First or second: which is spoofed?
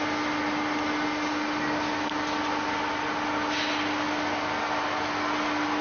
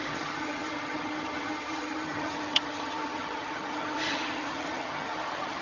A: second